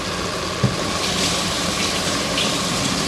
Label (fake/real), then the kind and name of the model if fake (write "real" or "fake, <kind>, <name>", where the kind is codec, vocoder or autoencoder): real